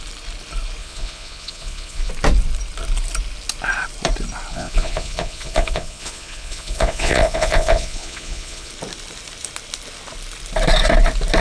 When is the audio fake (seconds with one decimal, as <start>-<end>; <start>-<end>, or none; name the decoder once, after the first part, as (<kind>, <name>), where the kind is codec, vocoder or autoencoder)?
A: 0.8-2.1 (vocoder, Vocos); 4.5-8.7